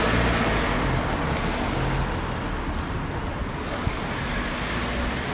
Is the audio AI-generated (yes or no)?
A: no